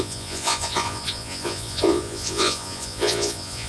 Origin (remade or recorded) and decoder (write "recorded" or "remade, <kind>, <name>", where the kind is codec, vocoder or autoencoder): remade, vocoder, Vocos